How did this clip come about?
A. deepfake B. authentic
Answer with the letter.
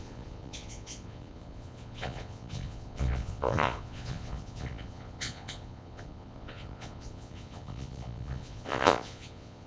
A